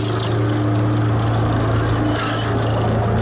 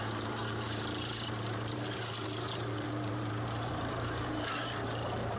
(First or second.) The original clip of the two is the first